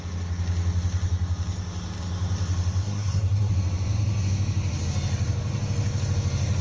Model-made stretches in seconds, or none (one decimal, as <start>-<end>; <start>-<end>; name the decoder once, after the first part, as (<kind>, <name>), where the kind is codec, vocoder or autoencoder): 2.8-3.5 (codec, SNAC)